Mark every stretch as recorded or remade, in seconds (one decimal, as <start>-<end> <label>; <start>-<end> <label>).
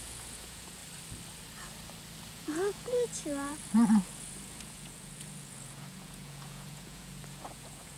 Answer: 0.0-0.8 remade; 0.8-2.3 recorded; 2.3-8.0 remade